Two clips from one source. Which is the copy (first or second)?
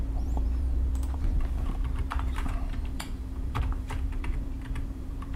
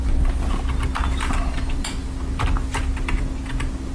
first